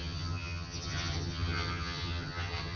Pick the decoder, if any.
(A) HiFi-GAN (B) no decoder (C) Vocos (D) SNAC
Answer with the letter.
A